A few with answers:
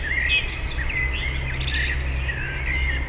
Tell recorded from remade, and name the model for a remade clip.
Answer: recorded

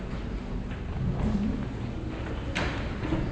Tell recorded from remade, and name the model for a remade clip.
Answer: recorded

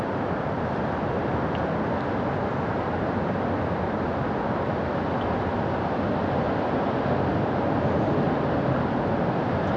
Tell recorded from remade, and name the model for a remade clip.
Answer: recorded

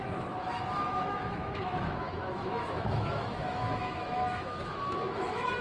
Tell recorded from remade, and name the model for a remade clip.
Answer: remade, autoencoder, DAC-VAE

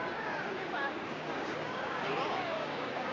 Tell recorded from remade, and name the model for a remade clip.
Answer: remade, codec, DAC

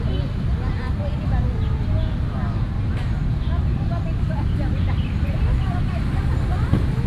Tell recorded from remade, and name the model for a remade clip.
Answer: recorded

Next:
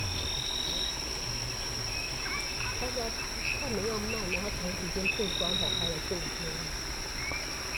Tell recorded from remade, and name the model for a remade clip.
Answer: recorded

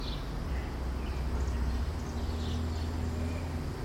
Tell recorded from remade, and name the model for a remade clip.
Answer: recorded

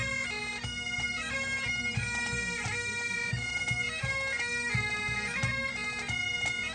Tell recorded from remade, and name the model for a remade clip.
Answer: recorded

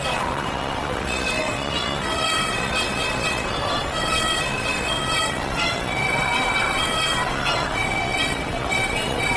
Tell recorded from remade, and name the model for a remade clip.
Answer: remade, vocoder, WaveNeXt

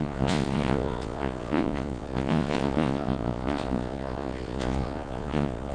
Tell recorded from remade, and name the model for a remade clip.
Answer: remade, vocoder, Vocos